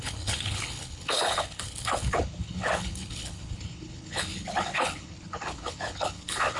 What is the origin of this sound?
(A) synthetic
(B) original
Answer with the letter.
A